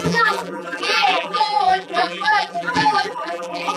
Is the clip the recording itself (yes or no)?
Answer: no